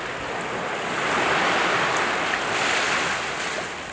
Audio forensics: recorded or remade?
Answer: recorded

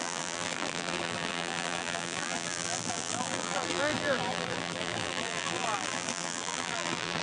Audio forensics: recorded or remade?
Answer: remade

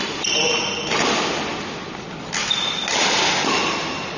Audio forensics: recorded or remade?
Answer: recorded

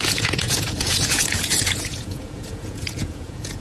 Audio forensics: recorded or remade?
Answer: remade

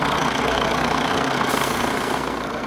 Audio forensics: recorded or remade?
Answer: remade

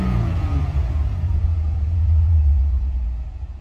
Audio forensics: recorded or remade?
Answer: remade